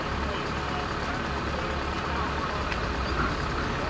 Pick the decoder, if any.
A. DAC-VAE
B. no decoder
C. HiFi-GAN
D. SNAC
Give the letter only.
B